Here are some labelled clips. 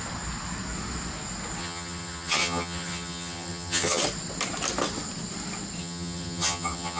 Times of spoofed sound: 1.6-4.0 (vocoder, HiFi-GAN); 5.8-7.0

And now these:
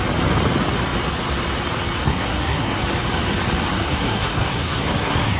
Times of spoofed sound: 2.0-2.8 (codec, SNAC); 3.7-5.4

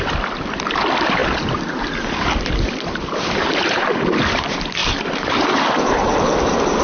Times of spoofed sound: 0.0-1.2 (vocoder, BigVGAN v2); 2.6-6.8

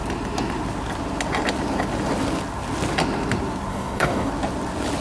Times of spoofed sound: 3.7-4.3 (codec, DAC)

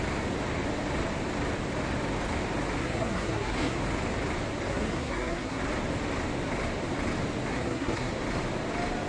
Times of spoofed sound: 2.8-3.8 (codec, SNAC); 4.7-5.6; 7.5-8.1

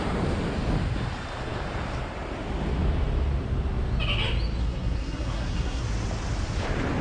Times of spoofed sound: 4.6-5.8 (codec, SNAC)

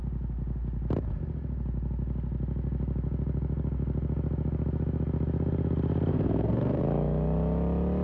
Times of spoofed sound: 6.1-6.8 (codec, SNAC)

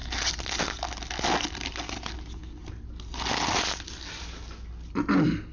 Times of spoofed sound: none